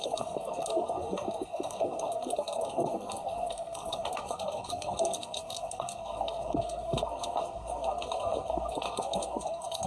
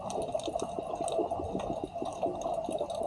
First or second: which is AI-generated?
first